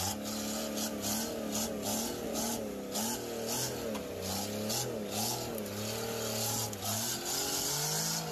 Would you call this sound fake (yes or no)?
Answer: no